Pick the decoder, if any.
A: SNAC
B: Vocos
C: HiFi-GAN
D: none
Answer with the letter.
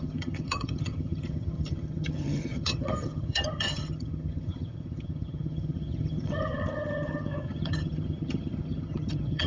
C